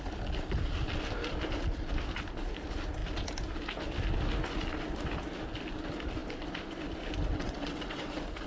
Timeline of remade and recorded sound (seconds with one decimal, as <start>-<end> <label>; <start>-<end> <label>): 0.0-7.3 recorded; 7.3-8.1 remade; 8.1-8.5 recorded

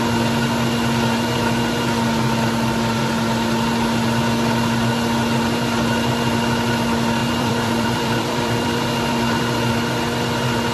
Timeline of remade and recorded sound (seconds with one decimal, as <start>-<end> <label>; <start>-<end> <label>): 0.0-7.2 recorded; 7.2-9.4 remade; 9.4-10.7 recorded

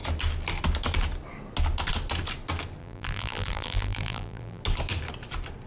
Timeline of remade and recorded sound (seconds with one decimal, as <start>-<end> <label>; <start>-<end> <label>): 0.0-2.8 recorded; 2.8-4.6 remade; 4.6-5.7 recorded

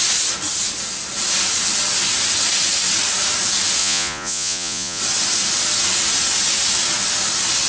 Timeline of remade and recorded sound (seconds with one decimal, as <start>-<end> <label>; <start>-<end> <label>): 0.0-3.8 recorded; 3.8-5.0 remade; 5.0-7.7 recorded

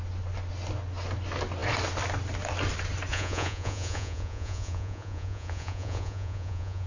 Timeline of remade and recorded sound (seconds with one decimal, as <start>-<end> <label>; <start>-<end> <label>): 0.0-3.1 recorded; 3.1-6.9 remade

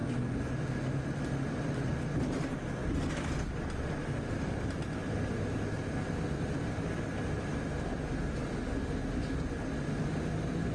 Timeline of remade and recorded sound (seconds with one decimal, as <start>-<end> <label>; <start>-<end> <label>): 0.0-10.7 recorded

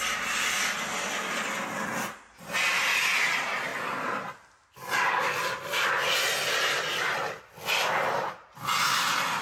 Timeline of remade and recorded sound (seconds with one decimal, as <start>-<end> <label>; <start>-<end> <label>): 0.0-9.4 recorded

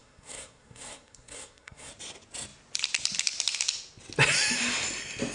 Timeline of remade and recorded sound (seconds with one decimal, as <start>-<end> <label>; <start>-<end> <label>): 0.0-1.9 remade; 1.9-5.3 recorded